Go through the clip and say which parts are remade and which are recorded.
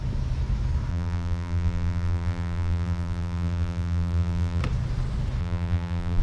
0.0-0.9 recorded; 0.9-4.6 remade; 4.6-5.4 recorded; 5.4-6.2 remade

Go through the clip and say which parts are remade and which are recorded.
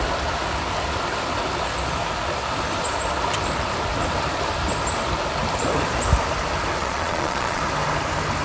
0.0-6.8 recorded; 6.8-7.6 remade; 7.6-8.4 recorded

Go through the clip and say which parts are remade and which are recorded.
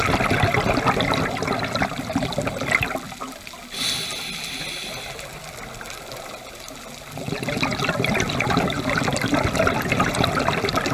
0.0-10.9 recorded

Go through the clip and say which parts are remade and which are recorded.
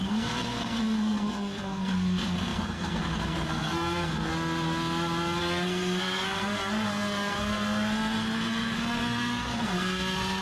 0.0-4.3 remade; 4.3-5.4 recorded; 5.4-10.4 remade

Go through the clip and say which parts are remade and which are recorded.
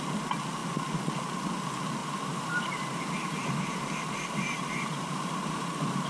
0.0-2.0 recorded; 2.0-6.1 remade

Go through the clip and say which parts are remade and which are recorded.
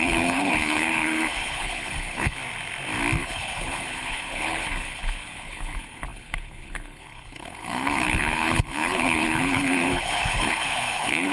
0.0-2.4 remade; 2.4-3.2 recorded; 3.2-11.3 remade